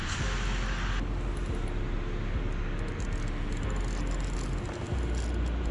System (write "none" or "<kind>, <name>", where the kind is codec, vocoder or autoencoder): none